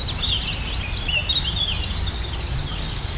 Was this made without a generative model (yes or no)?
yes